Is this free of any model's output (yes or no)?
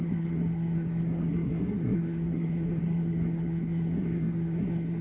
no